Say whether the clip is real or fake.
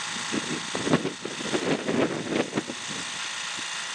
real